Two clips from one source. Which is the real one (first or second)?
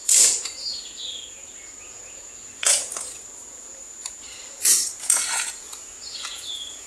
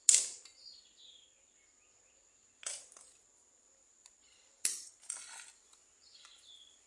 second